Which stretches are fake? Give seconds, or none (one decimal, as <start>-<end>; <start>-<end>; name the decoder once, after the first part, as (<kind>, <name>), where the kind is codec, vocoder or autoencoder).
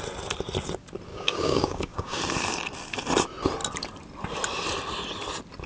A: 1.1-2.2 (codec, DAC)